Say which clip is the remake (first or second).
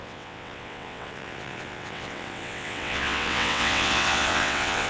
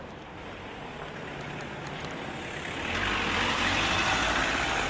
first